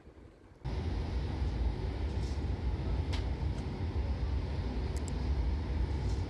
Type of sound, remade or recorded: recorded